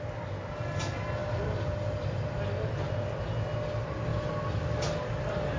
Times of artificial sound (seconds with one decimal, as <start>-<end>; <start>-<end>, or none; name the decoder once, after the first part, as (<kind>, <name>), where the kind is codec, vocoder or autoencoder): none